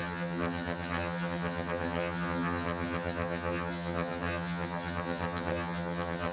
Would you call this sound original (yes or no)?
no